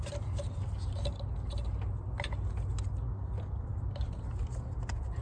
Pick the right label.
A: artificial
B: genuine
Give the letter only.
B